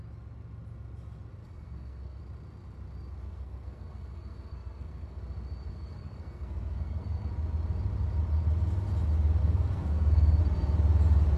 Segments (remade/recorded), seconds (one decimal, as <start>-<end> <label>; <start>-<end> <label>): 0.0-1.4 recorded; 1.4-2.2 remade; 2.2-3.2 recorded; 3.2-5.2 remade; 5.2-5.7 recorded; 5.7-7.3 remade; 7.3-9.4 recorded; 9.4-10.4 remade; 10.4-11.4 recorded